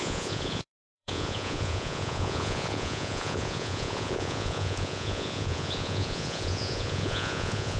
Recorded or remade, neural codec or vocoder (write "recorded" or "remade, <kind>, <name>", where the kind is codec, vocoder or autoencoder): remade, vocoder, Vocos